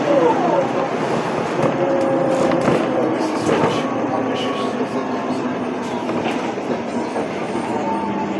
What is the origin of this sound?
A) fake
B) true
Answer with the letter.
B